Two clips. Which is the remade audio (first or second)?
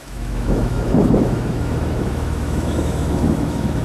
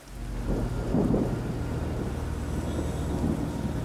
first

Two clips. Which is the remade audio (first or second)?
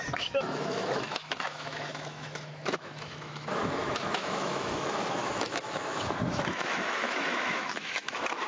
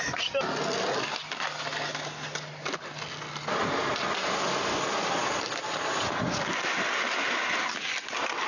first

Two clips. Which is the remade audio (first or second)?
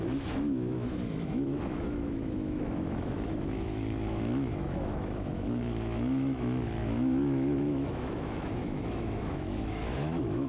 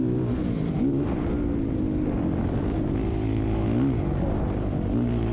first